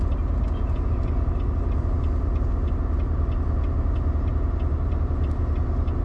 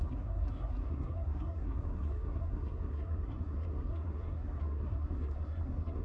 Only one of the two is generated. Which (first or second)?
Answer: second